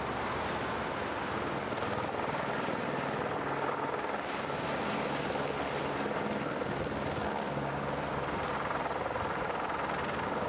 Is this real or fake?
real